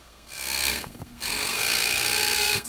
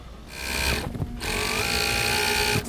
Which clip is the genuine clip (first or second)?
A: second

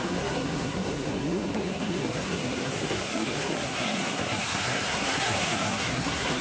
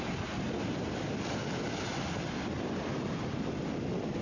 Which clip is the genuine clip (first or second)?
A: second